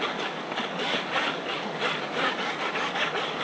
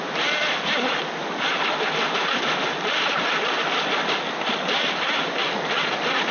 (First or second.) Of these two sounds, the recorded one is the second